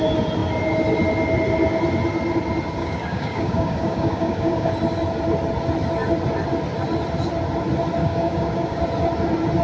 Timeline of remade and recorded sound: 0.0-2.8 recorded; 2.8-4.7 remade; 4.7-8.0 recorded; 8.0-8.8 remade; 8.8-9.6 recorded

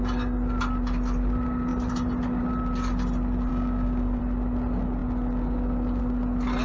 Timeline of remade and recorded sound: 0.0-3.5 recorded; 3.5-4.2 remade; 4.2-6.6 recorded

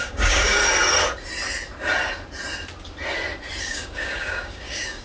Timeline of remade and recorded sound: 0.0-0.6 remade; 0.6-3.6 recorded; 3.6-5.0 remade

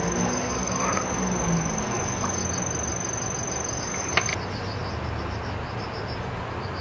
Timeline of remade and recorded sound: 0.0-2.4 remade; 2.4-3.8 recorded; 3.8-4.3 remade; 4.3-6.8 recorded

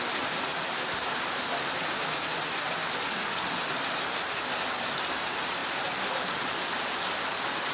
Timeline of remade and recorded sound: 0.0-7.7 recorded

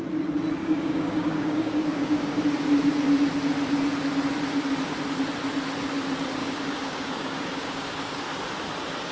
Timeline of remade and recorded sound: 0.0-0.6 recorded; 0.6-2.4 remade; 2.4-6.4 recorded; 6.4-8.2 remade; 8.2-9.1 recorded